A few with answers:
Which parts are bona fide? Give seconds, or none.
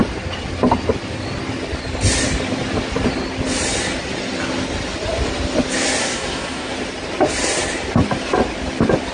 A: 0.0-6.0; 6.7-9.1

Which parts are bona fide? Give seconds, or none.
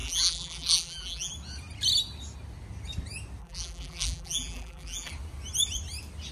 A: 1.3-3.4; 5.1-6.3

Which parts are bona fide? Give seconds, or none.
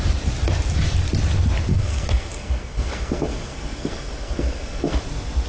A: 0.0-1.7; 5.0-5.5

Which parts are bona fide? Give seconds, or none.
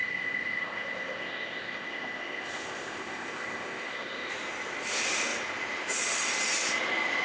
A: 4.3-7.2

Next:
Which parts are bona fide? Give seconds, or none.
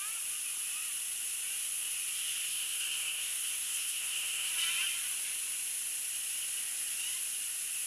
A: 0.0-2.5; 4.5-7.9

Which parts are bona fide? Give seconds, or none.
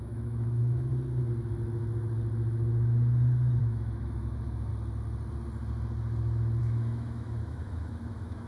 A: 0.9-3.6; 4.7-6.6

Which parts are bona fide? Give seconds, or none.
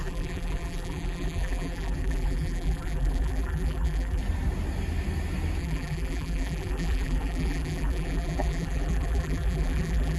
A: 4.2-5.6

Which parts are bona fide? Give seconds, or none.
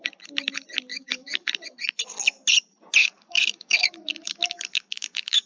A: 0.0-0.9; 1.5-3.0